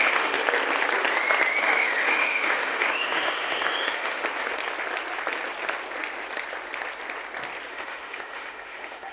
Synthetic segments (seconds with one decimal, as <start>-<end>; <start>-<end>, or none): 0.0-0.4; 1.6-4.2; 7.7-9.1